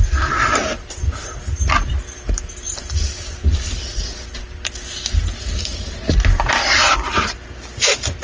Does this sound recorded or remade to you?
recorded